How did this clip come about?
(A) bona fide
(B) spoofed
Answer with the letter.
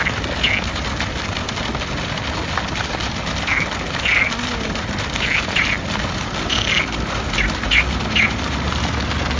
A